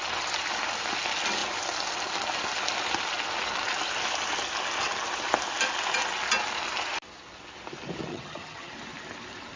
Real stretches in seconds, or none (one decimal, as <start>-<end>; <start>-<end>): 0.0-8.1; 8.7-9.6